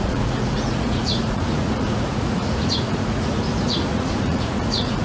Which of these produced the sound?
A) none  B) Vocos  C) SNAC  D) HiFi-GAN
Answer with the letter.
B